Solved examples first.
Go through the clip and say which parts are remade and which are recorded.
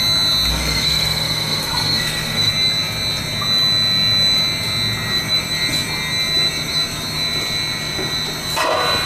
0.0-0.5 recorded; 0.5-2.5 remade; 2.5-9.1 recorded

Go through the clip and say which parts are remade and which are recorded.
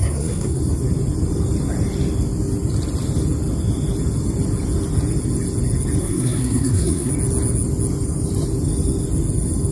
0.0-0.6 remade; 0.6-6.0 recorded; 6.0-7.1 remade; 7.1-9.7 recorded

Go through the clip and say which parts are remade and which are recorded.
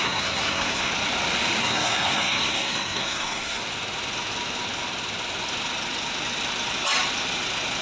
0.0-0.9 remade; 0.9-1.6 recorded; 1.6-3.6 remade; 3.6-7.8 recorded